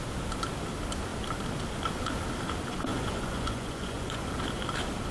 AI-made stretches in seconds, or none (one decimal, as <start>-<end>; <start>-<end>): 2.9-4.3